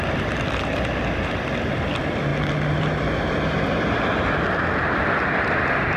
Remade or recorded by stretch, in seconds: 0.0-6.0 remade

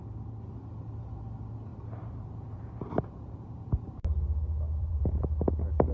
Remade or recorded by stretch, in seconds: 0.0-1.7 recorded; 1.7-5.2 remade; 5.2-5.9 recorded

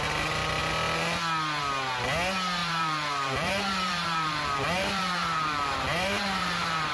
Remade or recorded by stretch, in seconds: 0.0-2.6 recorded; 2.6-6.9 remade

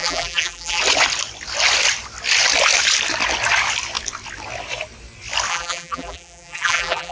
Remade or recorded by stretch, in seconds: 0.0-0.8 remade; 0.8-5.5 recorded; 5.5-7.1 remade

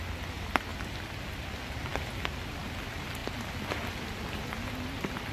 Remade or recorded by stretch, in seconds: 0.0-1.9 recorded; 1.9-2.6 remade; 2.6-5.3 recorded